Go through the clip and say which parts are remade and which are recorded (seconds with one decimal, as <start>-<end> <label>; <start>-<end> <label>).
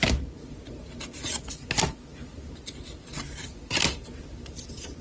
0.0-5.0 recorded